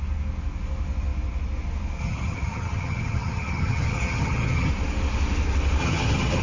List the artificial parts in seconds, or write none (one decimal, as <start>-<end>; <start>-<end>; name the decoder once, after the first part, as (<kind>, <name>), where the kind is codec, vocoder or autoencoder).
2.0-4.7 (vocoder, HiFi-GAN); 5.8-6.4